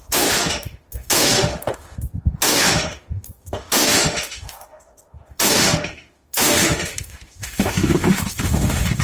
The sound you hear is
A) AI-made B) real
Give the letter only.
A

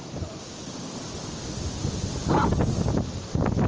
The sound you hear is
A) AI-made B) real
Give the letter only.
B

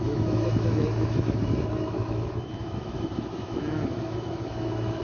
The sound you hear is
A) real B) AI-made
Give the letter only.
B